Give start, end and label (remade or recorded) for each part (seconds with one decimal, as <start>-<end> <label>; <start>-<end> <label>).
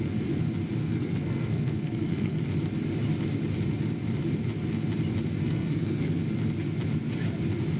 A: 0.0-0.8 recorded; 0.8-2.4 remade; 2.4-5.4 recorded; 5.4-6.2 remade; 6.2-7.8 recorded